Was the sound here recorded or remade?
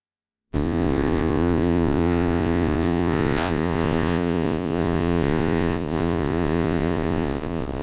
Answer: remade